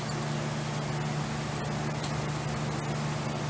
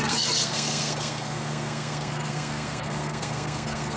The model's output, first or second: second